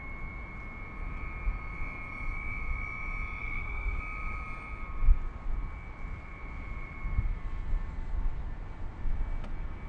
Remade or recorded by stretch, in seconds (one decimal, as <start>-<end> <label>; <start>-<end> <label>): 0.0-3.4 recorded; 3.4-4.0 remade; 4.0-9.9 recorded